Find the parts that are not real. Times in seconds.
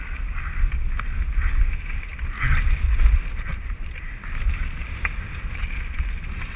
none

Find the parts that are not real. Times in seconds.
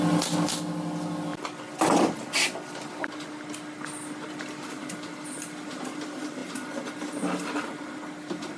none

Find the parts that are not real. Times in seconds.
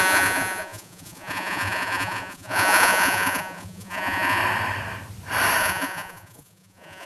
0.0-4.4 (vocoder, Vocos); 5.6-7.1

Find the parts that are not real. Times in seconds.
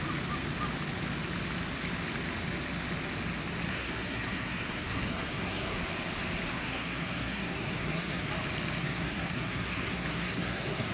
3.7-5.8 (codec, SNAC); 6.5-8.3; 8.8-10.9